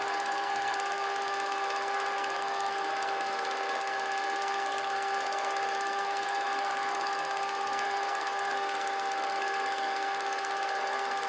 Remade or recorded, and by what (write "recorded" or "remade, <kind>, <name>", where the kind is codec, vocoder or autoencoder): remade, codec, SNAC